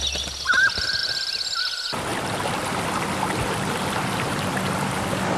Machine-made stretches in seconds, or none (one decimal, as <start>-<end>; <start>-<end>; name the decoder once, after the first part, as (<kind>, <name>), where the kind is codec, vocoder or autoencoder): none